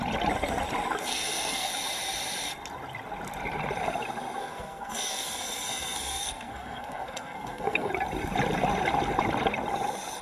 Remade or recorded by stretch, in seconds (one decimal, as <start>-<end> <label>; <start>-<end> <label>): 0.0-1.1 recorded; 1.1-1.7 remade; 1.7-4.4 recorded; 4.4-7.9 remade; 7.9-10.2 recorded